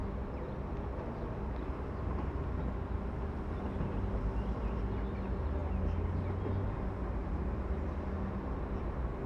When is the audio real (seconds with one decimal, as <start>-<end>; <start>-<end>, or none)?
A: 0.0-9.3